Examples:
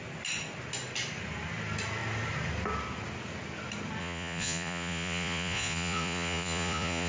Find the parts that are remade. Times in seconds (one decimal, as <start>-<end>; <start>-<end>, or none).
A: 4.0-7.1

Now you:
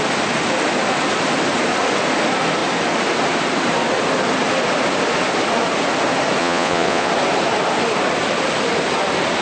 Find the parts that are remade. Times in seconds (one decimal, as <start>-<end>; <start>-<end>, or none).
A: 6.4-7.1

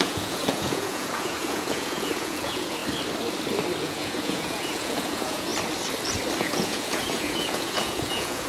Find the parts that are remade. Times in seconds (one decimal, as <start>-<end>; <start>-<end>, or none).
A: 0.0-2.8; 3.8-5.5; 6.4-8.5

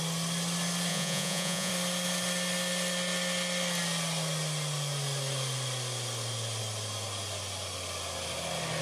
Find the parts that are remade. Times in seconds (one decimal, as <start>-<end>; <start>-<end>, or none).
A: 0.9-1.7

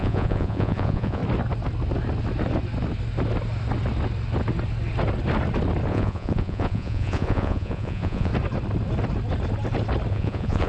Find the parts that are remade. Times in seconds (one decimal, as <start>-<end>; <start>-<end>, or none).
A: 0.0-1.2; 5.9-8.3; 10.1-10.7